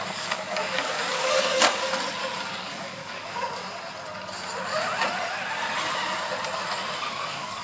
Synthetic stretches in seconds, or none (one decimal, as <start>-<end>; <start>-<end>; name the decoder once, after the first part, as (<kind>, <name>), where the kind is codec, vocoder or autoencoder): 0.0-1.8 (codec, DAC); 2.5-3.6; 7.1-7.6